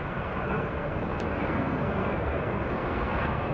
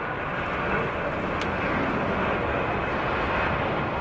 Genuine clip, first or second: second